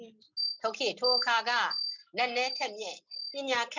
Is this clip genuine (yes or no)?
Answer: yes